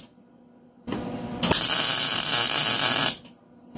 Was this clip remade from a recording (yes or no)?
no